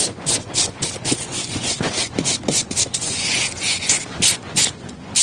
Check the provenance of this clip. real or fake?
fake